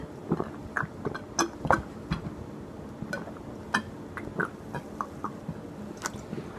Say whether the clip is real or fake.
real